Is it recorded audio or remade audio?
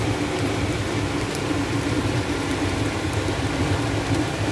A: remade